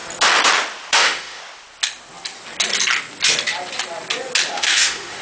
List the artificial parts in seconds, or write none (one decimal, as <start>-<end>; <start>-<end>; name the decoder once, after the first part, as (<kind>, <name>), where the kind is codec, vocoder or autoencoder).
0.9-1.4 (autoencoder, DAC-VAE); 4.5-5.2

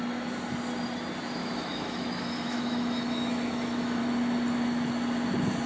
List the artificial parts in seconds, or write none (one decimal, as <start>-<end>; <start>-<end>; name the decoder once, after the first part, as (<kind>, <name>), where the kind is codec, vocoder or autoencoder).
1.4-4.0 (autoencoder, DAC-VAE)

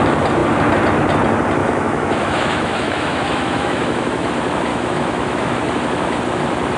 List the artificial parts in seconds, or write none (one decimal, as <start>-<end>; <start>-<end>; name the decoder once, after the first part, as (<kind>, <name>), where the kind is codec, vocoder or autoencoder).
1.6-4.3 (autoencoder, DAC-VAE); 4.7-5.6

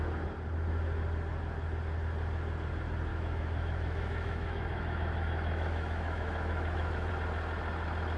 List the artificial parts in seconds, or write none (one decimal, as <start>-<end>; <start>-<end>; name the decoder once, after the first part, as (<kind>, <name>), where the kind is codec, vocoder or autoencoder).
3.1-7.1 (autoencoder, DAC-VAE)